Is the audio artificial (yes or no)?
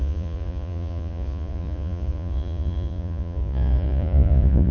yes